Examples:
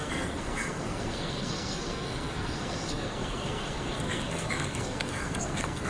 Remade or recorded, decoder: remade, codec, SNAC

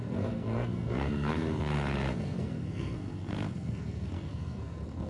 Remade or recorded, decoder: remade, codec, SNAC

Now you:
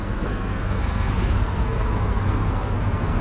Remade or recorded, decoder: remade, codec, SNAC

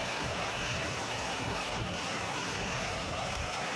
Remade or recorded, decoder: remade, codec, SNAC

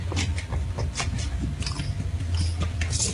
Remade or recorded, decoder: recorded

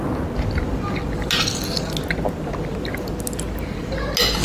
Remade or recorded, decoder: recorded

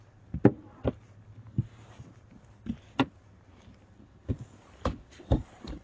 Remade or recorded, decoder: recorded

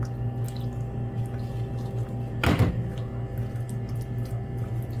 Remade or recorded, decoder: recorded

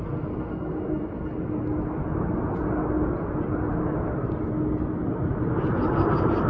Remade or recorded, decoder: recorded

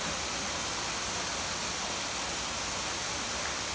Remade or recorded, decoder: recorded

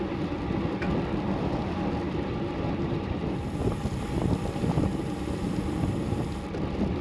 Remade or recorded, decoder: recorded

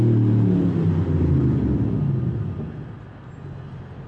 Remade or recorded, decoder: recorded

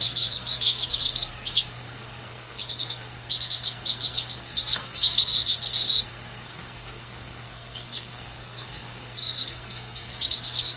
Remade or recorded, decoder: remade, codec, SNAC